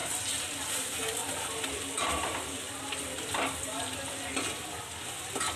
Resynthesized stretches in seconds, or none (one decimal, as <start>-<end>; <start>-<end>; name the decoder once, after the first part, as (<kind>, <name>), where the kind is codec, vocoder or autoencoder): 0.0-0.6 (vocoder, BigVGAN v2); 1.2-4.6